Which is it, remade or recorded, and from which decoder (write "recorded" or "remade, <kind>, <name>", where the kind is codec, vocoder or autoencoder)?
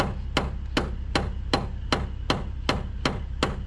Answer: recorded